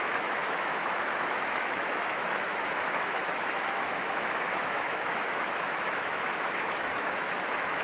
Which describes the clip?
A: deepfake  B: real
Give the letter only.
A